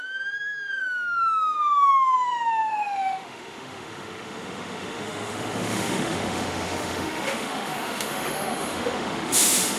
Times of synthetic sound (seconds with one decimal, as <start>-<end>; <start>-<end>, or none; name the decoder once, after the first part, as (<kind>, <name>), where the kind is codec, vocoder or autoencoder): 0.0-9.8 (autoencoder, DAC-VAE)